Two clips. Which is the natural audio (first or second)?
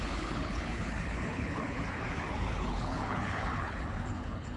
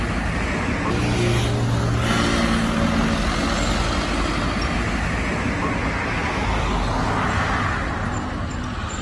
second